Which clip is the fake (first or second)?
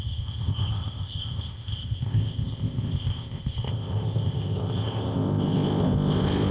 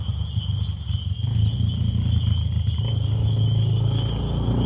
first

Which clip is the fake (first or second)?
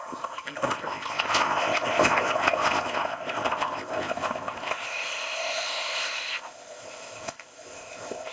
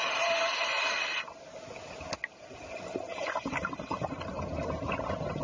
first